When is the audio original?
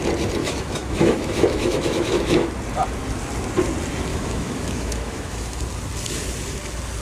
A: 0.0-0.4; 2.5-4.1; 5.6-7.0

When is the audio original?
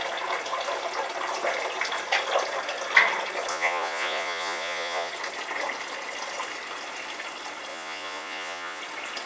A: 0.0-3.5; 5.1-7.7; 8.8-9.3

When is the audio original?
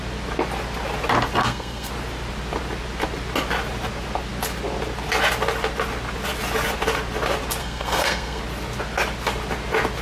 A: 0.0-1.4; 1.9-7.6; 8.4-10.0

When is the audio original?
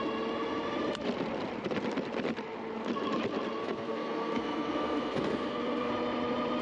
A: 0.0-3.6; 5.9-6.6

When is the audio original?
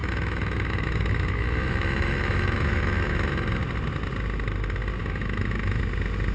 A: 3.6-5.0; 5.8-6.3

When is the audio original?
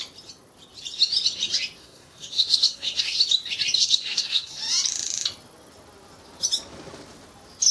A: 0.0-1.8; 3.2-3.8; 4.5-7.7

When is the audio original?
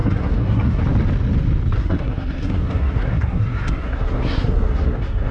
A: 0.8-1.8